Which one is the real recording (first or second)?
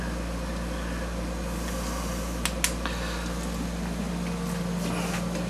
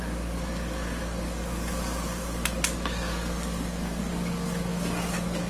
first